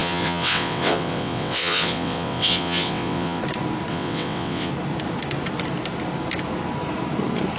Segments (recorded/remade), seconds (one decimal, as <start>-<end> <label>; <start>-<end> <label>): 0.0-3.4 remade; 3.4-3.9 recorded; 3.9-4.7 remade; 4.7-7.6 recorded